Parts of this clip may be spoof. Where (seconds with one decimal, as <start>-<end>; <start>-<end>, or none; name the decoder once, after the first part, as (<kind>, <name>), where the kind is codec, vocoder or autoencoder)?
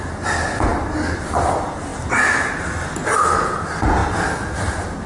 none